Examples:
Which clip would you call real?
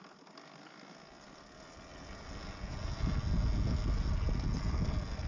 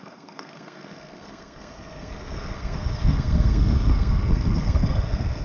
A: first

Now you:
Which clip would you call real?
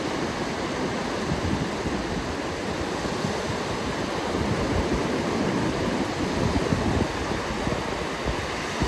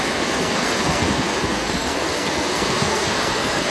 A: first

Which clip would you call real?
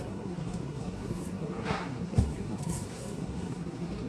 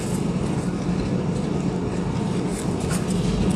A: second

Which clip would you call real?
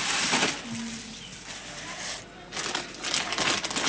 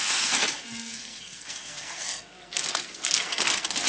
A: first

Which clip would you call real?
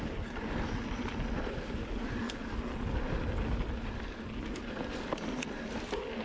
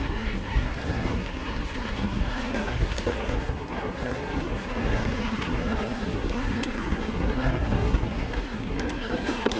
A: first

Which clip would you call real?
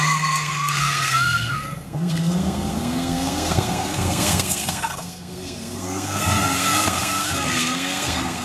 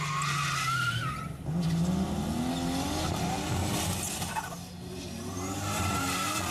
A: second